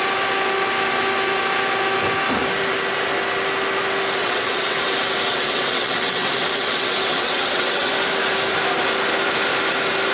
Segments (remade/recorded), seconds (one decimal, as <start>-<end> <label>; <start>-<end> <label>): 0.0-4.2 recorded; 4.2-4.8 remade; 4.8-5.3 recorded; 5.3-7.9 remade; 7.9-10.1 recorded